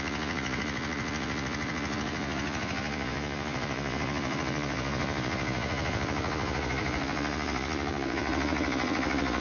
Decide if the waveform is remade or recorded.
remade